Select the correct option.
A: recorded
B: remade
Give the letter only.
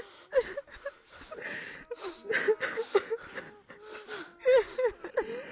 A